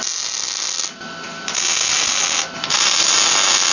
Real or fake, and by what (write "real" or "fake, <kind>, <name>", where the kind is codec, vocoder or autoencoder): real